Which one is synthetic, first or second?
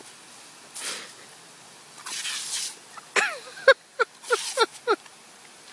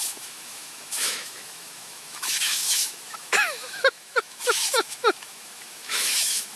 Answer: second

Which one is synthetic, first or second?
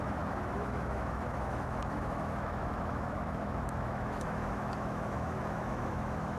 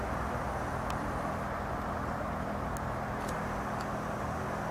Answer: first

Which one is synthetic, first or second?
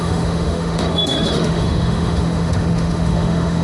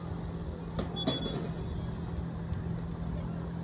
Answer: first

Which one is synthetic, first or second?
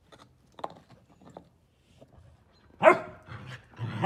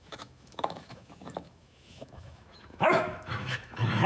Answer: second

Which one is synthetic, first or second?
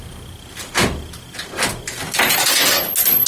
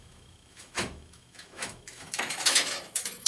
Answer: second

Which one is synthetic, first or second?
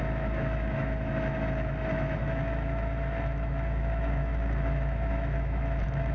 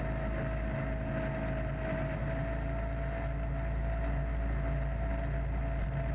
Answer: first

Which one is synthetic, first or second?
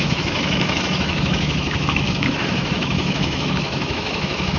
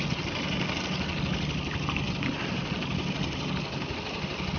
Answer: first